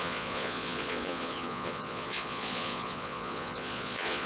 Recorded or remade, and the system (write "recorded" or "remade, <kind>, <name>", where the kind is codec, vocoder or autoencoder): remade, vocoder, Vocos